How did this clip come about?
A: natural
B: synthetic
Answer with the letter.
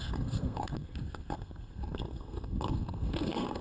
B